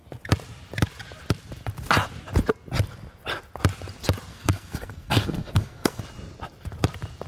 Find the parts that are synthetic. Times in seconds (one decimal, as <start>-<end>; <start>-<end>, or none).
4.3-6.0